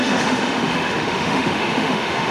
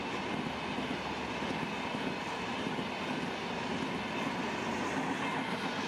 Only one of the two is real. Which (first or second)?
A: second